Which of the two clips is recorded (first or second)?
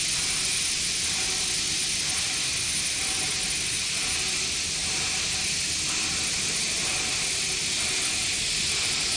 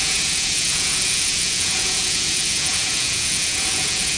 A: first